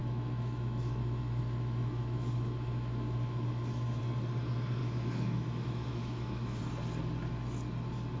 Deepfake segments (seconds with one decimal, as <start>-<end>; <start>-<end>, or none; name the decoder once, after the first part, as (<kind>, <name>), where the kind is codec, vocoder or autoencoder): 0.0-4.0 (autoencoder, DAC-VAE); 4.8-6.6